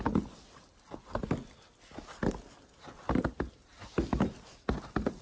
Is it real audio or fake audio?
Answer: real